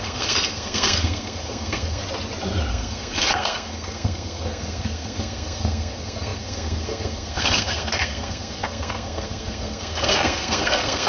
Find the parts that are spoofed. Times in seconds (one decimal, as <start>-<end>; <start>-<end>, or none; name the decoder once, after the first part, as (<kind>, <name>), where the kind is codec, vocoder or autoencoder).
0.0-2.0 (codec, SNAC); 2.7-11.1